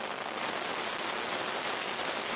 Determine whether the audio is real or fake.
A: real